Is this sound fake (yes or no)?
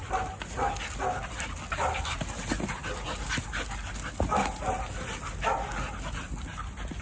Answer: no